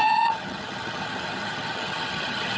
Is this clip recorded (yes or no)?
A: no